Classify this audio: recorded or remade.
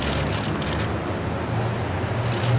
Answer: recorded